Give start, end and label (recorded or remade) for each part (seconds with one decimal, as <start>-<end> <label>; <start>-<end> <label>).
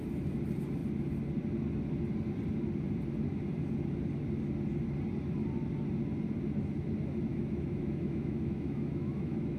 0.0-7.3 recorded; 7.3-9.6 remade